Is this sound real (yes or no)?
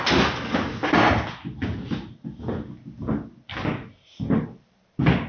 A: yes